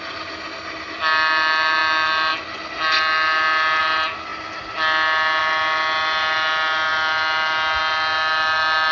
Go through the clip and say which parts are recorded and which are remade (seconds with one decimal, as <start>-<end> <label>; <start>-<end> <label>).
0.0-8.9 recorded